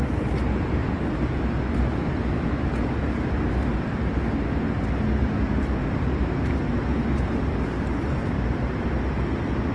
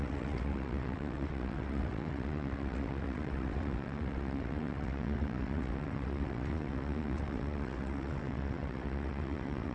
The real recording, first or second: first